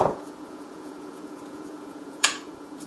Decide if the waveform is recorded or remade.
remade